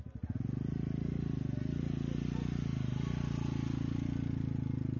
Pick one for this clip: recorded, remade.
recorded